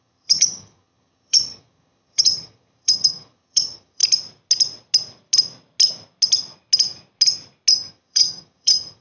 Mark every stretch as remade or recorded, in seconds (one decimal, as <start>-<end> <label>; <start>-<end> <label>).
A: 0.0-4.0 remade; 4.0-7.7 recorded; 7.7-9.0 remade